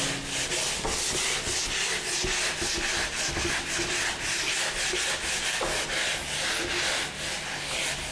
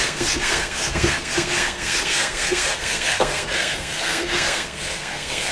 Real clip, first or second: first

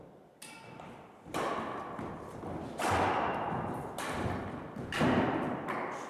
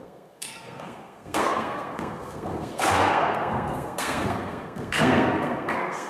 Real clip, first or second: first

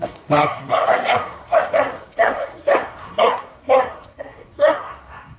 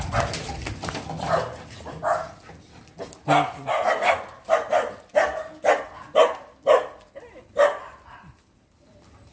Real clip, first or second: second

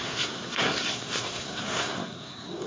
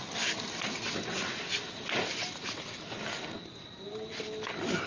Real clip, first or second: second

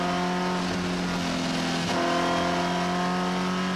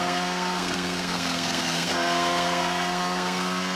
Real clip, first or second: first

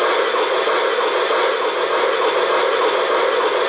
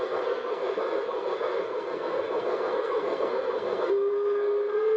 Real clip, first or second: first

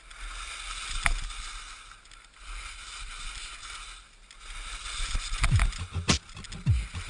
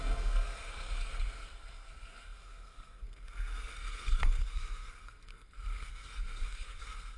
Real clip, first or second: first